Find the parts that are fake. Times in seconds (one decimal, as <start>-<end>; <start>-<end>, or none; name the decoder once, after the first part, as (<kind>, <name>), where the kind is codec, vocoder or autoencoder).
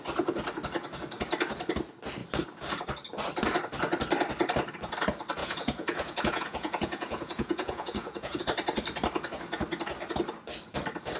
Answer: 5.4-8.4 (vocoder, Vocos)